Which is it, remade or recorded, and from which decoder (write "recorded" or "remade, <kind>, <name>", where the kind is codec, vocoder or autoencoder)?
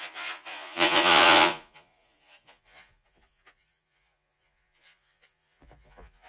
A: remade, vocoder, Vocos